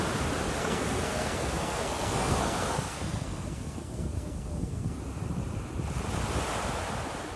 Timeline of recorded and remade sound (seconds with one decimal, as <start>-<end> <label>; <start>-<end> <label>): 0.0-0.6 recorded; 0.6-5.0 remade; 5.0-7.4 recorded